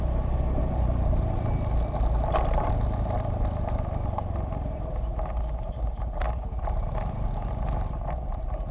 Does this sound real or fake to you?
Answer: real